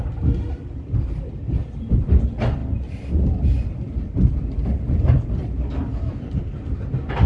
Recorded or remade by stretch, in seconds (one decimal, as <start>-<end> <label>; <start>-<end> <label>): 0.0-1.6 recorded; 1.6-2.2 remade; 2.2-2.6 recorded; 2.6-6.4 remade; 6.4-7.3 recorded